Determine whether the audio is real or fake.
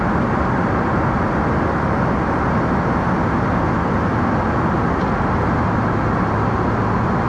real